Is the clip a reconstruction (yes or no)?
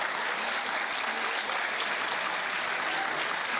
no